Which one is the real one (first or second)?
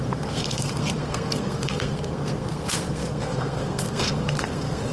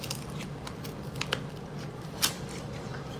second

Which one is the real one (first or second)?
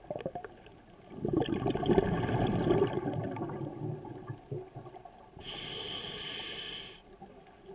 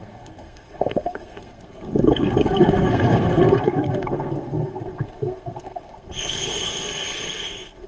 first